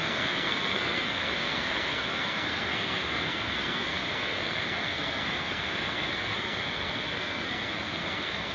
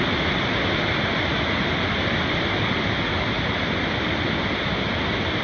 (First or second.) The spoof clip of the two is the first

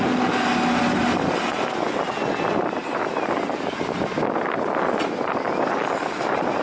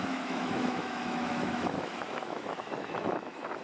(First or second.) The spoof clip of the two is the second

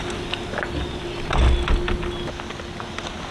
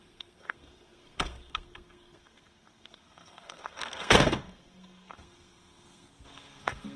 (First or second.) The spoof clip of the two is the second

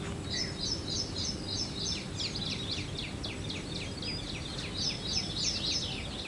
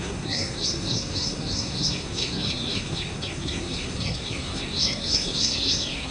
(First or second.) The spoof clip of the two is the second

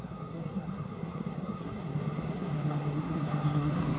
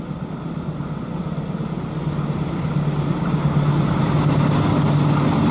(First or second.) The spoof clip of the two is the first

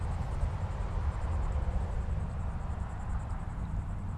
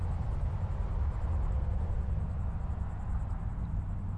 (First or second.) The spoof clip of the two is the first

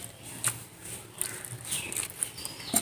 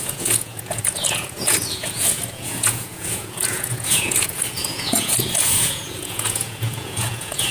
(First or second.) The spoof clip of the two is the second